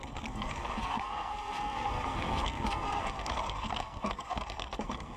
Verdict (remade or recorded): remade